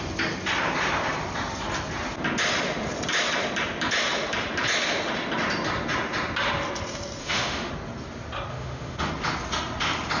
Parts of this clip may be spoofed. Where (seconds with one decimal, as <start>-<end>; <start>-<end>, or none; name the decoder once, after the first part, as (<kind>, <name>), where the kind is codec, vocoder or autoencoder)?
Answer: 7.2-7.7 (autoencoder, DAC-VAE); 8.5-9.1